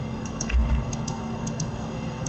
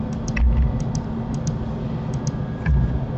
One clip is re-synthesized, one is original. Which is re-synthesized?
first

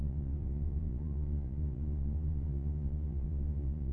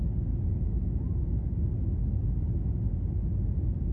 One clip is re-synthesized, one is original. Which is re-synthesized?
first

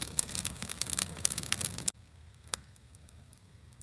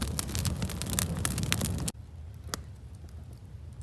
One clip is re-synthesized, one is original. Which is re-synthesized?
first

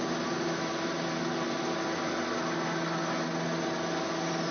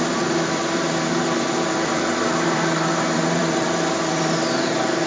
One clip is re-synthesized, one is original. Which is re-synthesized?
second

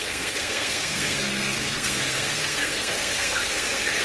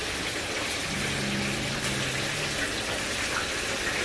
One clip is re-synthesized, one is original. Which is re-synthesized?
first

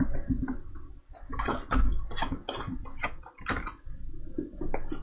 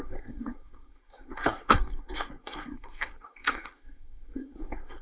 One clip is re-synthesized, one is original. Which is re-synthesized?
second